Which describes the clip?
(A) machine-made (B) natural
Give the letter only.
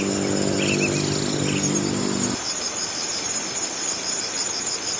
B